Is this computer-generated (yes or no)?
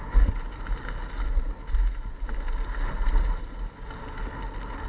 no